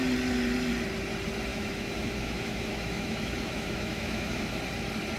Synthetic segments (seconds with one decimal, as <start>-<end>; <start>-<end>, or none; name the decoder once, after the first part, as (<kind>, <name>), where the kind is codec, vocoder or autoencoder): 1.5-4.6 (autoencoder, DAC-VAE)

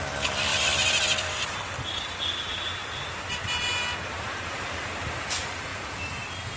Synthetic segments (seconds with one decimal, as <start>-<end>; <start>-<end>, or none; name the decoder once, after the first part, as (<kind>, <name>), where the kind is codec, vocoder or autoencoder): none

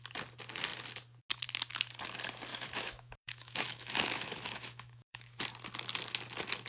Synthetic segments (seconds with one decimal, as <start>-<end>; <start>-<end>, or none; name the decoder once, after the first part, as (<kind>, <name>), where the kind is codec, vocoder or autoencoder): 2.5-5.4 (autoencoder, DAC-VAE)

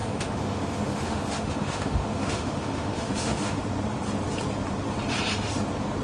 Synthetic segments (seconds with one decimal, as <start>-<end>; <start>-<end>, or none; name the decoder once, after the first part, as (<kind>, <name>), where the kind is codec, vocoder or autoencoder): 0.0-3.6 (autoencoder, DAC-VAE)

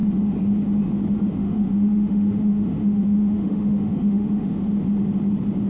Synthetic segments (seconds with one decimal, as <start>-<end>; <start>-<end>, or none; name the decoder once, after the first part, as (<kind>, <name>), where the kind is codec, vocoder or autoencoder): 1.4-4.6 (autoencoder, DAC-VAE)

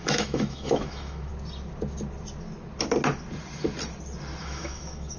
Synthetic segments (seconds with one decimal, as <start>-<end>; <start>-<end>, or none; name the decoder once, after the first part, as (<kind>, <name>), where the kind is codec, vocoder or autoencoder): 0.0-1.3 (autoencoder, DAC-VAE); 4.4-5.2

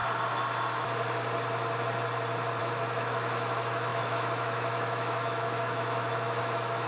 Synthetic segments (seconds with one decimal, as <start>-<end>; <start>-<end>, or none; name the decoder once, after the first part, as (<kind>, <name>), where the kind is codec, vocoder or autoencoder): 2.6-6.9 (autoencoder, DAC-VAE)

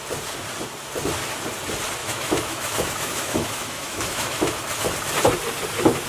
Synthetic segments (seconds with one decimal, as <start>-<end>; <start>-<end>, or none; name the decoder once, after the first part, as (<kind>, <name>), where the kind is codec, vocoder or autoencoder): 2.0-4.6 (autoencoder, DAC-VAE)